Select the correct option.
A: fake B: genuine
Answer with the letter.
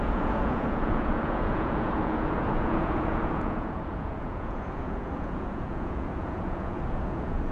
A